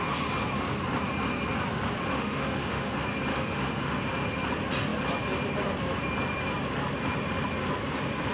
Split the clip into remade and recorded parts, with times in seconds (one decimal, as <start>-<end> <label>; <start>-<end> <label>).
0.0-2.1 recorded; 2.1-2.9 remade; 2.9-3.3 recorded; 3.3-4.0 remade; 4.0-8.3 recorded